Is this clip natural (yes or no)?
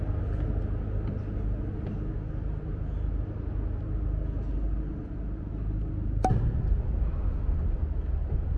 yes